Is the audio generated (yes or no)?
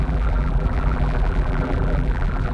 yes